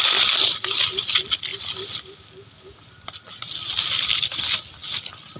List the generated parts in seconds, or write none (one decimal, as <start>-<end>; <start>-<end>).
none